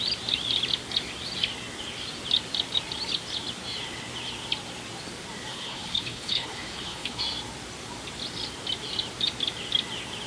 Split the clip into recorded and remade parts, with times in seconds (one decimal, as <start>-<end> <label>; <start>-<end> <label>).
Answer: 0.0-5.5 recorded; 5.5-7.2 remade; 7.2-10.3 recorded